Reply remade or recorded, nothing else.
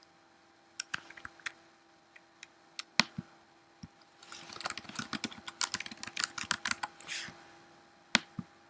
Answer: recorded